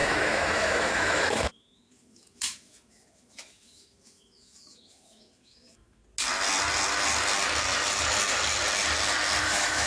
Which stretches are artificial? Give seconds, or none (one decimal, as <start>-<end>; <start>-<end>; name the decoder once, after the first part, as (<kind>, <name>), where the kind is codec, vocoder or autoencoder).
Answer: 0.0-6.0 (autoencoder, DAC-VAE); 9.4-9.9